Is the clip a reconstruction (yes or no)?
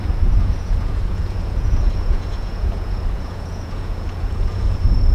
yes